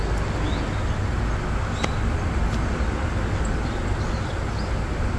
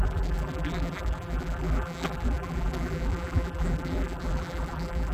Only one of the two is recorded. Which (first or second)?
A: first